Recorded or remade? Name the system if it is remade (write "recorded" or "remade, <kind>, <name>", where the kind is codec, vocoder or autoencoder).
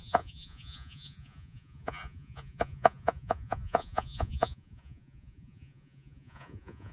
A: remade, vocoder, Vocos